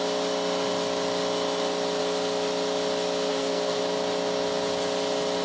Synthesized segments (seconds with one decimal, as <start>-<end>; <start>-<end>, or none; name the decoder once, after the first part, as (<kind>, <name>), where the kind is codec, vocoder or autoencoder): 3.3-3.8 (codec, SNAC)